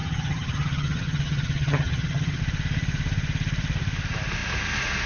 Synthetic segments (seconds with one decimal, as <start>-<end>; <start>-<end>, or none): 0.0-2.4